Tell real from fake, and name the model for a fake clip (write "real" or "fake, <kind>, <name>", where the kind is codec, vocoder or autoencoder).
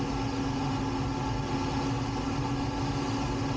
real